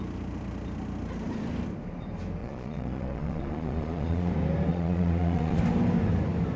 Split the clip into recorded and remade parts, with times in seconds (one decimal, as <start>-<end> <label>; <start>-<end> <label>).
0.0-2.4 recorded; 2.4-4.3 remade; 4.3-4.7 recorded; 4.7-5.6 remade; 5.6-6.6 recorded